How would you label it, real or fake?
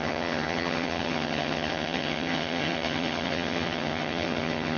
fake